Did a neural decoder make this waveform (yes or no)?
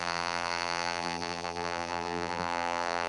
yes